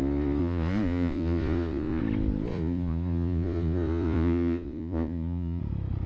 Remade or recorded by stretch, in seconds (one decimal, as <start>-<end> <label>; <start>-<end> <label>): 0.0-0.4 recorded; 0.4-2.0 remade; 2.0-2.5 recorded; 2.5-5.6 remade; 5.6-6.1 recorded